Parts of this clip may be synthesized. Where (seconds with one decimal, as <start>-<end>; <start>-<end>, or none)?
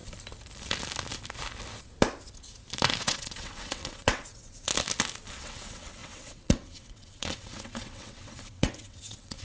3.0-4.7; 5.3-9.4